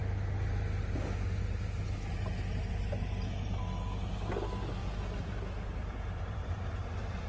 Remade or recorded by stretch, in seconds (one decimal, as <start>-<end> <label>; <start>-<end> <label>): 0.0-4.8 recorded; 4.8-6.6 remade; 6.6-7.3 recorded